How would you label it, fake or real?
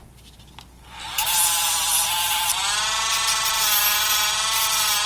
real